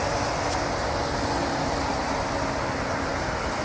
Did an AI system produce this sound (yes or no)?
no